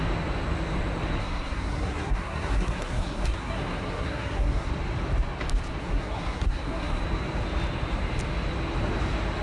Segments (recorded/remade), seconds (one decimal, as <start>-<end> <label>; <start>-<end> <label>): 0.0-1.2 recorded; 1.2-4.7 remade; 4.7-5.8 recorded; 5.8-7.0 remade; 7.0-9.4 recorded